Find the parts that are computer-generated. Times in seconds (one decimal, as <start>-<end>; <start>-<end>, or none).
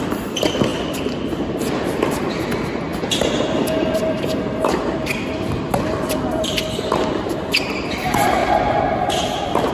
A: 0.0-8.4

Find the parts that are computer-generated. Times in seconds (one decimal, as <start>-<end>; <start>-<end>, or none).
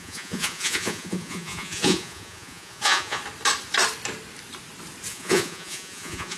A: 0.0-3.2; 5.1-6.4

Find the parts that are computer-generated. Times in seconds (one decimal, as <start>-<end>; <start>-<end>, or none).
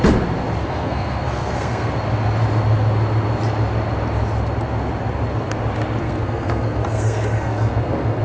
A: 0.6-1.9; 6.0-8.2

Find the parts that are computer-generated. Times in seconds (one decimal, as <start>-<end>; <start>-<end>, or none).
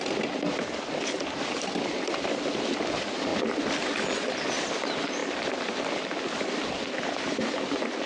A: 3.3-4.7; 5.2-6.9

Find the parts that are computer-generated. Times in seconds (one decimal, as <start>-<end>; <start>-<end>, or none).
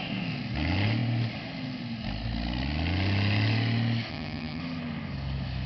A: 4.1-4.6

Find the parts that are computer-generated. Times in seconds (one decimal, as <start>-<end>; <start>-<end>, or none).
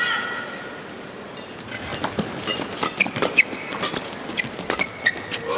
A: none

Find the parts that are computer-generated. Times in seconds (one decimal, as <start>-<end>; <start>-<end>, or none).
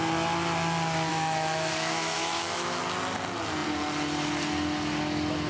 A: 1.1-2.8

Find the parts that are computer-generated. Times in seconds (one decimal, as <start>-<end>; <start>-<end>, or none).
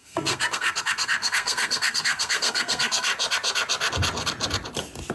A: 0.0-3.1